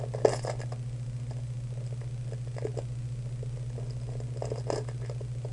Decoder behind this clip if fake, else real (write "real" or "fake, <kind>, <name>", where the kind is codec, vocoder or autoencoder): real